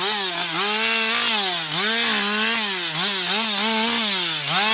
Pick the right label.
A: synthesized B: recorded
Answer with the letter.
B